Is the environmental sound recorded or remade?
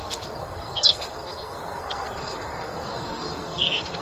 remade